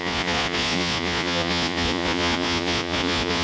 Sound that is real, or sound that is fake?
fake